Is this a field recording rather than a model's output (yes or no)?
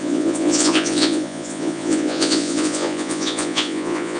no